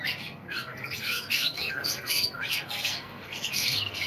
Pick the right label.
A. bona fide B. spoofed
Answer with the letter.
B